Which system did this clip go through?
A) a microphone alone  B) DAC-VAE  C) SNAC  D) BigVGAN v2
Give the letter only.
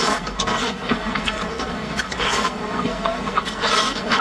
C